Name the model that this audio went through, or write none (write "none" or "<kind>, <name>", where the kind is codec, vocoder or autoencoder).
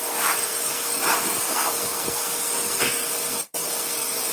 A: codec, SNAC